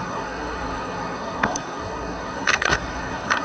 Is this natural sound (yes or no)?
no